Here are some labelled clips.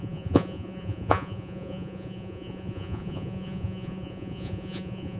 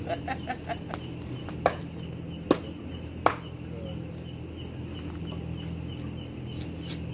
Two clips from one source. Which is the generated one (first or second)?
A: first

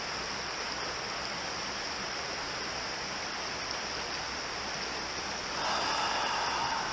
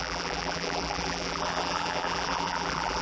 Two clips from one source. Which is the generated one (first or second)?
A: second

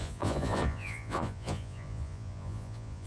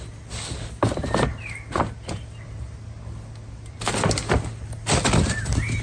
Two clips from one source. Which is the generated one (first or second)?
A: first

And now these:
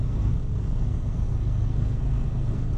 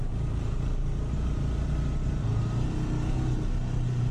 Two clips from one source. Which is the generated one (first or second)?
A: first